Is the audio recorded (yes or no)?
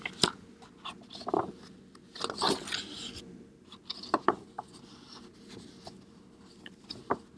yes